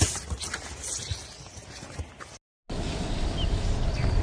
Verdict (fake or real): real